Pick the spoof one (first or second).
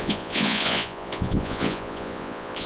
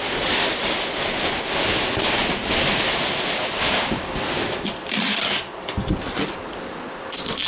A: first